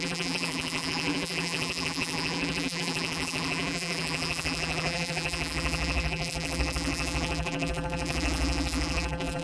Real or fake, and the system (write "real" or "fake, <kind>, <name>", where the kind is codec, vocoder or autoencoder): fake, vocoder, BigVGAN v2